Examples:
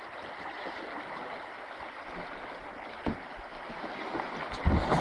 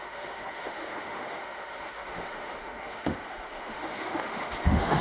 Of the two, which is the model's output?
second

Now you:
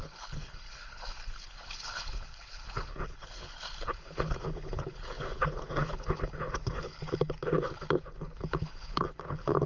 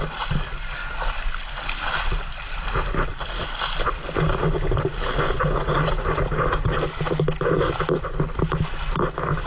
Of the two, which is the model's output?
first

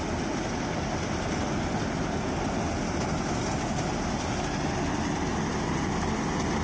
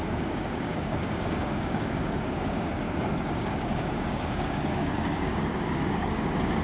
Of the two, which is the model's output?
second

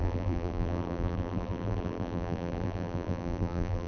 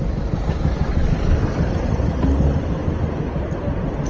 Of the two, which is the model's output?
first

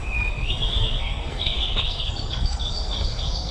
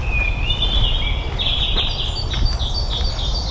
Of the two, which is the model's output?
first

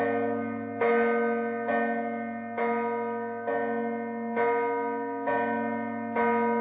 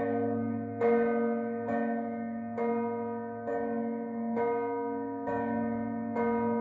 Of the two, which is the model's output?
second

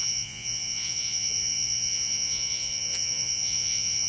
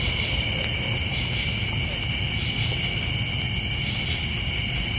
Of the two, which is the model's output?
first